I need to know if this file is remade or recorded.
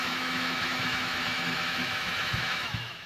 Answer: remade